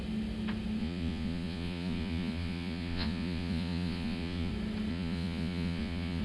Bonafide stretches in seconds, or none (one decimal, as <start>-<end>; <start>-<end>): 0.0-0.8; 4.5-4.9